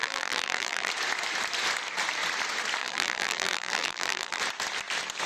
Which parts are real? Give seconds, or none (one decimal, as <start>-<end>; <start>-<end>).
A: 0.9-2.8; 4.4-5.3